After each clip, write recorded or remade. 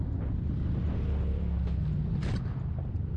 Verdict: recorded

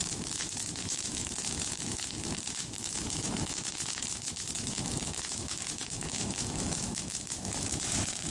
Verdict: remade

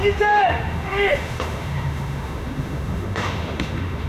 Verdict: remade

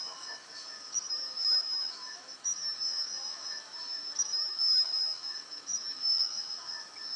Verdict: remade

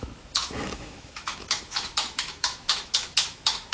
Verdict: remade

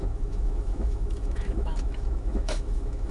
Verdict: remade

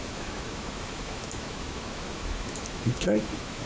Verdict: remade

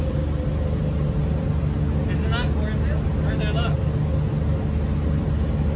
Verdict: recorded